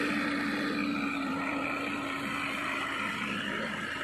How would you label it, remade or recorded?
recorded